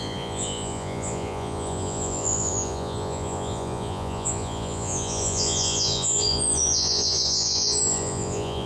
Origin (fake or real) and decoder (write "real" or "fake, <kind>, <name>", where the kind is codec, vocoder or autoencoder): fake, vocoder, Vocos